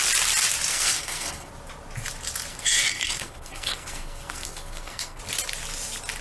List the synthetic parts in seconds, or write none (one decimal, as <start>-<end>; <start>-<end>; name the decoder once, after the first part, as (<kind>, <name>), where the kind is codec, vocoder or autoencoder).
0.7-1.5 (codec, SNAC); 2.5-5.2